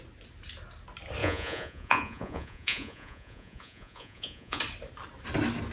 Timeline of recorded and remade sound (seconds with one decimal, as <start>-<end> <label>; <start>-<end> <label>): 0.0-1.2 recorded; 1.2-4.6 remade; 4.6-5.7 recorded